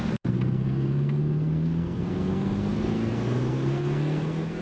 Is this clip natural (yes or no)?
no